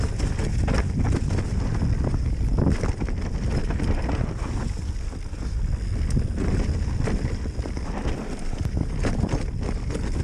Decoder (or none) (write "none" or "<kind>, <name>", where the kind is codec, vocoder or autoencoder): none